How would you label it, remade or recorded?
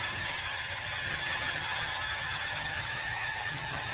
remade